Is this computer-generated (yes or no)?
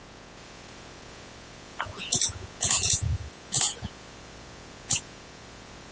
yes